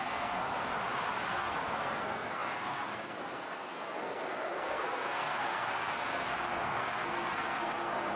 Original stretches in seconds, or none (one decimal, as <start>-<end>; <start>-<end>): 0.7-1.3